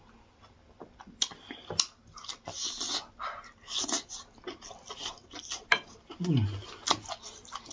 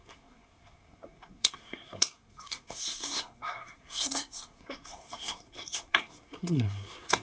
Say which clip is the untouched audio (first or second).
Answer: first